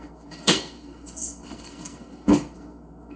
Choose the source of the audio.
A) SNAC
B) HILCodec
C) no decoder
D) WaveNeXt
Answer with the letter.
A